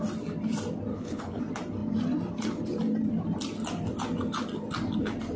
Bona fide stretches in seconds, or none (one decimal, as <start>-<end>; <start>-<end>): 0.0-0.9; 1.4-5.4